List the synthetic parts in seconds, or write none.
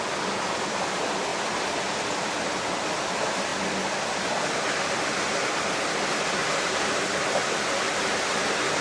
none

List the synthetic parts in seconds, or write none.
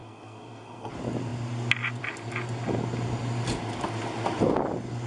0.0-0.9 (codec, SNAC)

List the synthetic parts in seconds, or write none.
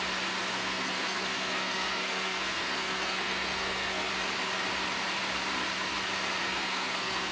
0.5-4.1 (codec, SNAC); 6.4-7.3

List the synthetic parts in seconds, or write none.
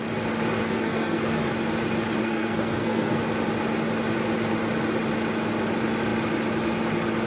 0.6-1.5 (codec, SNAC); 2.2-3.2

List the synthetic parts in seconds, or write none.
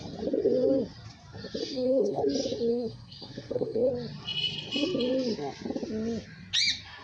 1.6-2.2 (codec, SNAC); 2.7-3.9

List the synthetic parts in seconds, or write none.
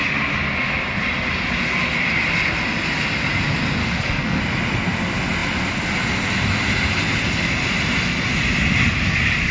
3.8-4.4 (codec, SNAC)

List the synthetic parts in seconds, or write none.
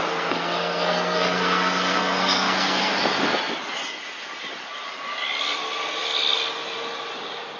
0.0-2.9 (codec, SNAC)